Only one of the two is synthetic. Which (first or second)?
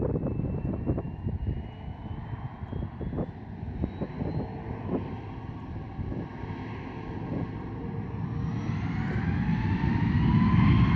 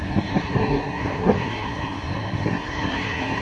second